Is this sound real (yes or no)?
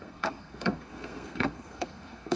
no